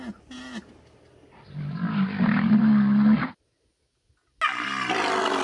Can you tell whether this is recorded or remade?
recorded